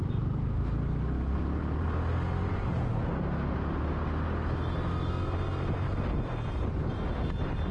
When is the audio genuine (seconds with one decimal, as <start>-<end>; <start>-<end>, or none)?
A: 0.0-7.7